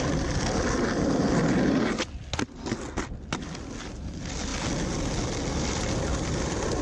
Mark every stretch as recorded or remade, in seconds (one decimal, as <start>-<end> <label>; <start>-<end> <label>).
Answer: 0.0-6.8 recorded